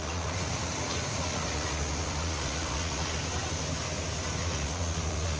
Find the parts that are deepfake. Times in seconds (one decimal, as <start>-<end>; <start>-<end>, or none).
0.0-3.2; 4.4-5.4